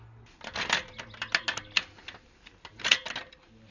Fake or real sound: real